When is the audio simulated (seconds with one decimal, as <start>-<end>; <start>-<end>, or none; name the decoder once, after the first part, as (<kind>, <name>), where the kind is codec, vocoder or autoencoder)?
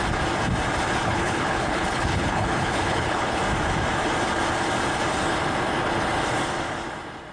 1.0-3.4 (codec, HILCodec)